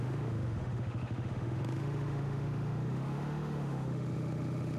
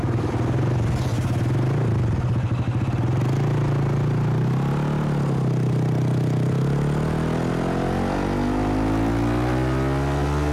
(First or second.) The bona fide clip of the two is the second